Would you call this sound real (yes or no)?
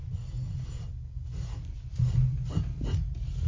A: yes